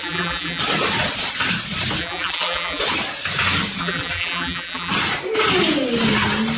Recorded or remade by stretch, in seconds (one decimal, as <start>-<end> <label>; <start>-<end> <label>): 0.0-0.6 remade; 0.6-2.0 recorded; 2.0-2.8 remade; 2.8-3.8 recorded; 3.8-4.9 remade; 4.9-6.6 recorded